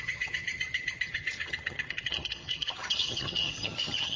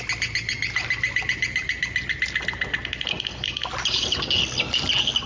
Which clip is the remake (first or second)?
first